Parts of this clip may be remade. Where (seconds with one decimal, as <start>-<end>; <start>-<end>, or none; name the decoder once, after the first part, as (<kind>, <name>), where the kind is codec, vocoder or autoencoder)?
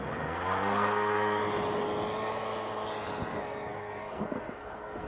0.0-1.4 (codec, SNAC); 3.3-5.1